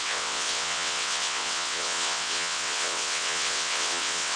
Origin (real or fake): fake